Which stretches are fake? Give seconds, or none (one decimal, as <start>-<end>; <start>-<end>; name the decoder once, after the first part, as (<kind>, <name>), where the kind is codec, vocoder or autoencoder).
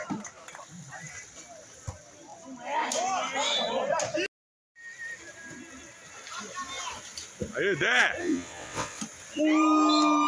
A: 8.2-9.0 (vocoder, WaveNeXt)